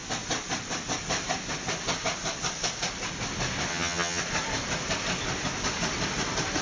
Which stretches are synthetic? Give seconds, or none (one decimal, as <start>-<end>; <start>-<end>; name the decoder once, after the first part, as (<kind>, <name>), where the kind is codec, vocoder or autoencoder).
3.7-4.2 (vocoder, HiFi-GAN)